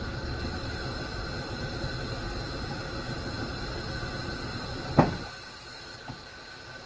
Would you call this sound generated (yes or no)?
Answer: no